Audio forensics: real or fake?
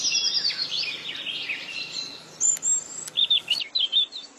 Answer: real